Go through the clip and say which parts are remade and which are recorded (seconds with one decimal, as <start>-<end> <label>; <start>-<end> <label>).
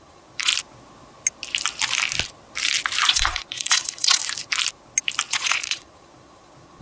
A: 0.0-0.5 remade; 0.5-3.1 recorded; 3.1-4.2 remade; 4.2-5.3 recorded; 5.3-6.8 remade